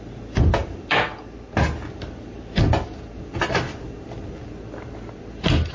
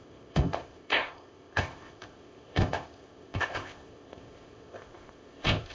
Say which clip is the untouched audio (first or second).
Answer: first